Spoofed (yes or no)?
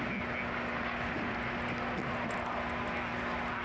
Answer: no